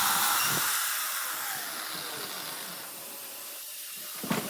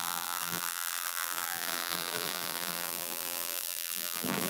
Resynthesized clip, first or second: second